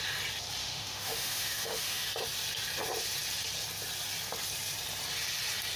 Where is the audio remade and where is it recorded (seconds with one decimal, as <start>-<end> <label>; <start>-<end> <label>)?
0.0-0.6 recorded; 0.6-2.1 remade; 2.1-5.8 recorded